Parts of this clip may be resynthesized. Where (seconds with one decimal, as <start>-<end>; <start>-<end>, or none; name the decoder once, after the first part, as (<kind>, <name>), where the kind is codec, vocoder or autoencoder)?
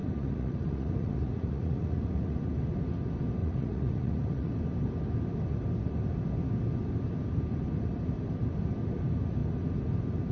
0.0-2.4 (vocoder, Vocos); 3.4-4.5